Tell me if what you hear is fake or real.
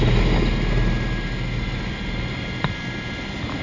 real